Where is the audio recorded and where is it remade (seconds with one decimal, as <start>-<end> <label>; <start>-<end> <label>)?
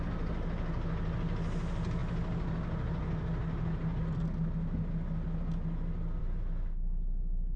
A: 0.0-7.6 recorded